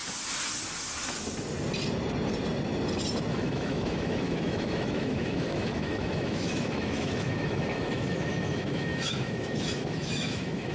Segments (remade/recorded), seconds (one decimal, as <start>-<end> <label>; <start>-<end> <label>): 0.0-3.3 recorded; 3.3-10.7 remade